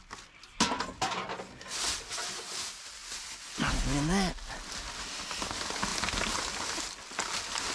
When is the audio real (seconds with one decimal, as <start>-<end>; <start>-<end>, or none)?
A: 0.0-7.7